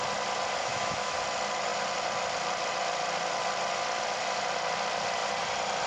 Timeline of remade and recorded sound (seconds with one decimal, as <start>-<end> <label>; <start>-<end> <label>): 0.0-0.6 recorded; 0.6-1.2 remade; 1.2-5.9 recorded